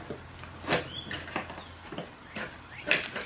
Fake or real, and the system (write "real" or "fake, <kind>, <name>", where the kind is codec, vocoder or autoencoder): real